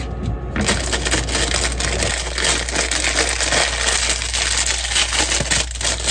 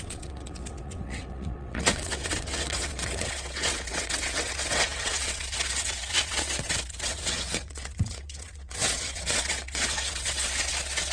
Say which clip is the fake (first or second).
second